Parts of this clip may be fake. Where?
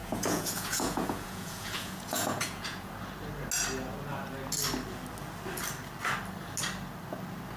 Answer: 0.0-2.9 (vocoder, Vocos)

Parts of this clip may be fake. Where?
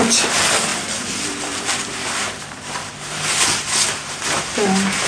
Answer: 0.7-2.9 (vocoder, BigVGAN v2)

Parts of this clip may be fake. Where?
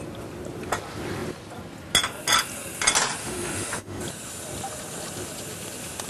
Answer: 3.2-4.0 (autoencoder, DAC-VAE)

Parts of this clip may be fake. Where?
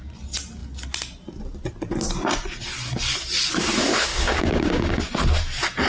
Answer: 4.1-5.0 (codec, DAC)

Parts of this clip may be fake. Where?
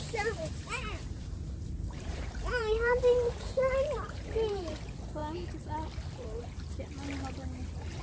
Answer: 0.4-4.7 (vocoder, BigVGAN v2)